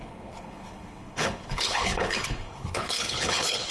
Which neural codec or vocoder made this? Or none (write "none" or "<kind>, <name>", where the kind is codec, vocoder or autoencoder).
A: codec, HILCodec